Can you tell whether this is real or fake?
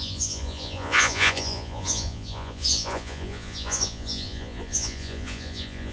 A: fake